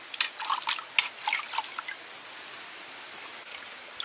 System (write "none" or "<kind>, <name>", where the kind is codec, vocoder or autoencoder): none